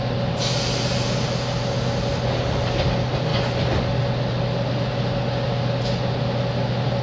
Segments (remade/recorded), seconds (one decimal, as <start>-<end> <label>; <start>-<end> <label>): 0.0-7.0 recorded